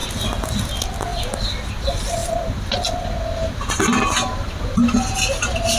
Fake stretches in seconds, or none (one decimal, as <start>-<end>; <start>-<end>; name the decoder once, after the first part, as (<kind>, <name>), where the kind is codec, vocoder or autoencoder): none